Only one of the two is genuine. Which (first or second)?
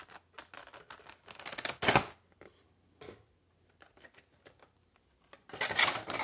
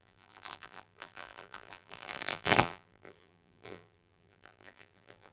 first